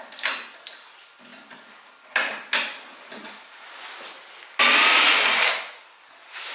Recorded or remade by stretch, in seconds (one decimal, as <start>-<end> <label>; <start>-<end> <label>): 0.0-6.5 recorded